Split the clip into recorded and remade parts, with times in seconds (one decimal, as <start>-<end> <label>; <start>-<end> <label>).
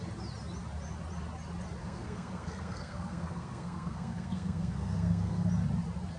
0.0-1.8 recorded; 1.8-5.5 remade; 5.5-6.2 recorded